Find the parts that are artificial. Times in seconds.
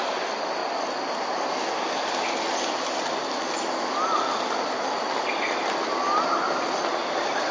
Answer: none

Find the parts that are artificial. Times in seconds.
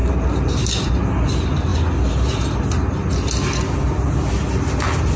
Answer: none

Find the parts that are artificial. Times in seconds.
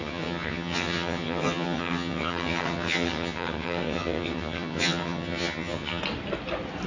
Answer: 0.0-6.0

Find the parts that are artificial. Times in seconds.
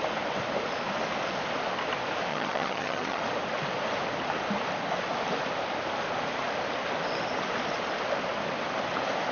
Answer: 2.3-3.2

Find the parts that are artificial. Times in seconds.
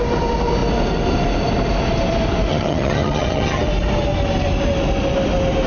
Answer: 2.5-3.6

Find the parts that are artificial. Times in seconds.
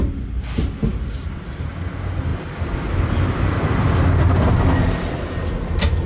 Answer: none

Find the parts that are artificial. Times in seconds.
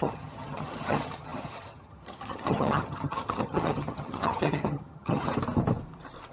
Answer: 0.0-5.3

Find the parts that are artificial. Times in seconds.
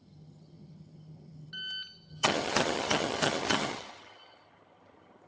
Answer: 0.0-1.5; 2.1-5.3